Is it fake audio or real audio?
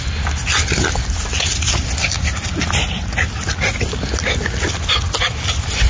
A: real